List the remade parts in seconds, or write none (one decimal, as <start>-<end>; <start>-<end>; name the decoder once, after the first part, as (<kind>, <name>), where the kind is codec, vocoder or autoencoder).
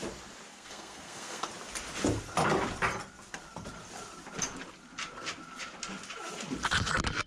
0.5-1.5 (codec, SNAC)